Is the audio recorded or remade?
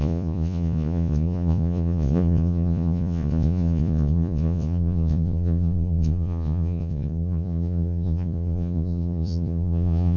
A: remade